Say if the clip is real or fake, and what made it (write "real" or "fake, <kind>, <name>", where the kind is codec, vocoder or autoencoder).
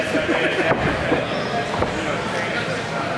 real